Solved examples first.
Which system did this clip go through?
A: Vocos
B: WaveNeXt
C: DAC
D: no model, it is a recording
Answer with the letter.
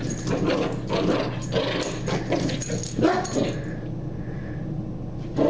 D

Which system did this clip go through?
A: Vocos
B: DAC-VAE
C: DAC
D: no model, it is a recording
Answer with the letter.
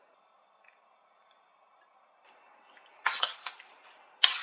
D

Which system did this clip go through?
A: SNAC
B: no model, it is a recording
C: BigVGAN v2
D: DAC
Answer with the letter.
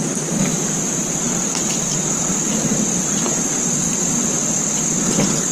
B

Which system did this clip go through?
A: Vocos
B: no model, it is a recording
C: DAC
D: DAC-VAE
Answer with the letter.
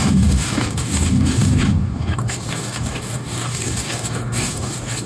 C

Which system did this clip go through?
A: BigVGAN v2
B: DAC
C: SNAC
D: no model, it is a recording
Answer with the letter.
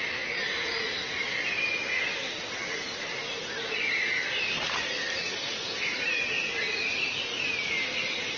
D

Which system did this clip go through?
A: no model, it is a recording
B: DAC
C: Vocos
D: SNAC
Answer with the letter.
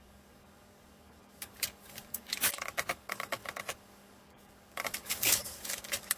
B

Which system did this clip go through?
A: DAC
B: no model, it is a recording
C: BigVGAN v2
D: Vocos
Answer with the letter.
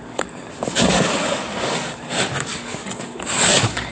A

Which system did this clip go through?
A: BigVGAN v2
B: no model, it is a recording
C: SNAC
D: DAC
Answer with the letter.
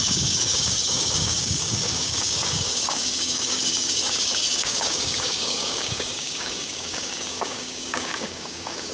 D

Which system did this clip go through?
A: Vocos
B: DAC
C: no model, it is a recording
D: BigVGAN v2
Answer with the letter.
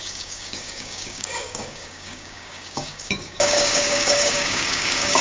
B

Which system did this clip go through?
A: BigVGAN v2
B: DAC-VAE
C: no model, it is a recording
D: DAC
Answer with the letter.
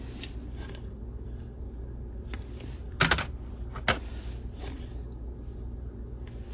C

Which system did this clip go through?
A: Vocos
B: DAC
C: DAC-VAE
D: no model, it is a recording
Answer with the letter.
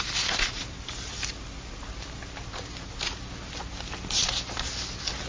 D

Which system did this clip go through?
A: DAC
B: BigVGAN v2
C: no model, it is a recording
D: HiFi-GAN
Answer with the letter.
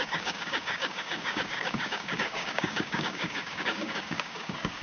A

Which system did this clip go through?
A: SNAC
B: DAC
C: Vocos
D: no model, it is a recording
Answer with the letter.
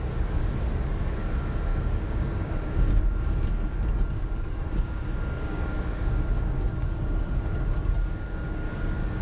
B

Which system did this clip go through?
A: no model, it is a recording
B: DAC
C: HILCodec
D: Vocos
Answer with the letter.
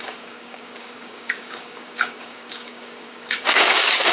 B